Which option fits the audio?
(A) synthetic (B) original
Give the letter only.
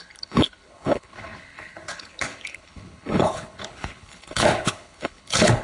A